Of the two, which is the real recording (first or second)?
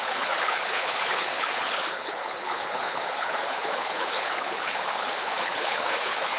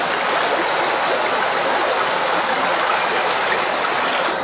second